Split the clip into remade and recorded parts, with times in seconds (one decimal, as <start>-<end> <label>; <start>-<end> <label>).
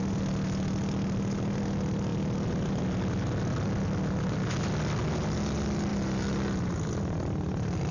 0.0-7.9 recorded